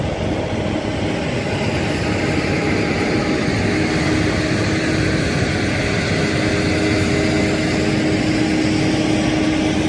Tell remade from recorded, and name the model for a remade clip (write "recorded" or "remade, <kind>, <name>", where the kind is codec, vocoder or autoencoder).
recorded